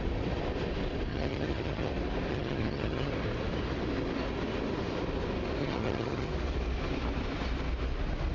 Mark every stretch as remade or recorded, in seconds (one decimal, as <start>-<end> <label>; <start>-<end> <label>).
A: 0.0-1.1 recorded; 1.1-1.9 remade; 1.9-2.3 recorded; 2.3-3.1 remade; 3.1-5.6 recorded; 5.6-6.3 remade; 6.3-8.3 recorded